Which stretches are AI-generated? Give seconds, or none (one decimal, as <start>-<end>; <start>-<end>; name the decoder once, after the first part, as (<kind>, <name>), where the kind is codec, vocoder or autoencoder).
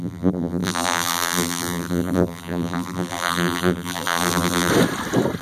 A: 0.0-4.7 (vocoder, BigVGAN v2)